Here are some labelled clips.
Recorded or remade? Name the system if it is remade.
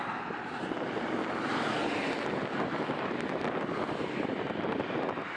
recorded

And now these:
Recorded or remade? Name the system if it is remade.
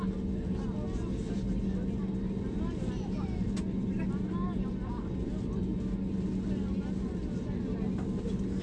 recorded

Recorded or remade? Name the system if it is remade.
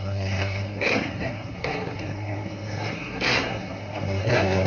remade, codec, SNAC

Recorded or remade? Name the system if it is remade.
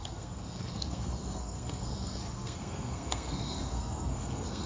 remade, codec, SNAC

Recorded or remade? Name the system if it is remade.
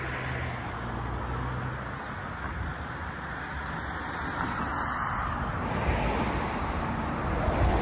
recorded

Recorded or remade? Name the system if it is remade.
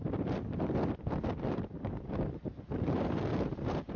recorded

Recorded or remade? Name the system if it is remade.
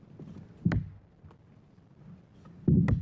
recorded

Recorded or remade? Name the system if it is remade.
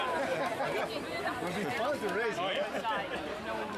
recorded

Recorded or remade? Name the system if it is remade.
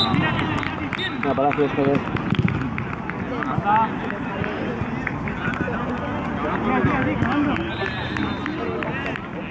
recorded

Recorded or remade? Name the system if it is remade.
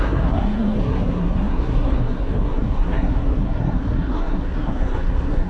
remade, codec, SNAC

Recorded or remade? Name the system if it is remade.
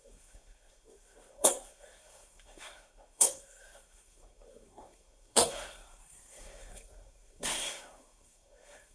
remade, codec, SNAC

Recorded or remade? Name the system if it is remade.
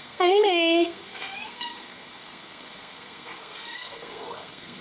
remade, codec, SNAC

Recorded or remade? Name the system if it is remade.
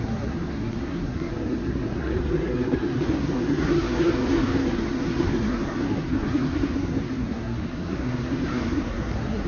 remade, codec, SNAC